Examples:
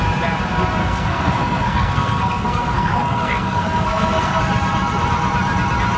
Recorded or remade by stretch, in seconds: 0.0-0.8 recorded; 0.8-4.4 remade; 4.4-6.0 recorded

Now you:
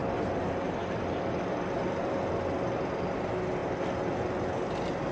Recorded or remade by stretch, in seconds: 0.0-5.1 recorded

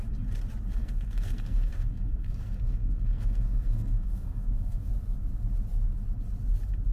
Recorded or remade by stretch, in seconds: 0.0-0.8 recorded; 0.8-4.9 remade; 4.9-6.9 recorded

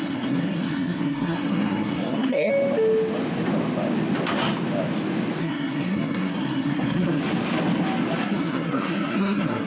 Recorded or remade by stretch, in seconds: 0.0-2.5 remade; 2.5-5.4 recorded; 5.4-7.2 remade; 7.2-8.2 recorded; 8.2-9.7 remade

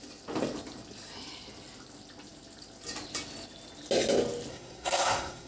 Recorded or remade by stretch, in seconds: 0.0-4.5 recorded; 4.5-5.5 remade

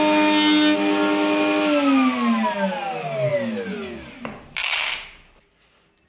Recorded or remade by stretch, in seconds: 0.0-6.1 recorded

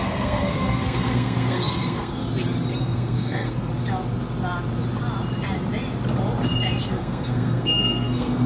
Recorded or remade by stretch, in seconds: 0.0-2.2 remade; 2.2-2.7 recorded; 2.7-3.7 remade; 3.7-6.9 recorded; 6.9-8.5 remade

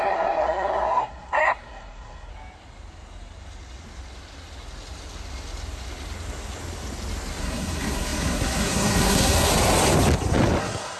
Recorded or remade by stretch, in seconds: 0.0-2.3 remade; 2.3-7.4 recorded; 7.4-9.5 remade; 9.5-10.6 recorded; 10.6-11.0 remade